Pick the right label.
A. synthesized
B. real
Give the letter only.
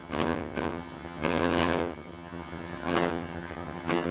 A